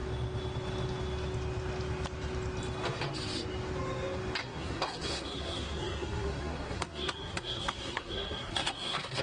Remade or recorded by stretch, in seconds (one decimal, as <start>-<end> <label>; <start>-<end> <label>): 0.0-4.4 recorded; 4.4-9.2 remade